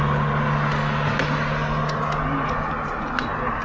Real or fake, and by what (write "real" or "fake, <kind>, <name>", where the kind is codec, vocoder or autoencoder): real